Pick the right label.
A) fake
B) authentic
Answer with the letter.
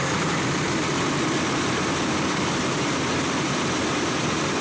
B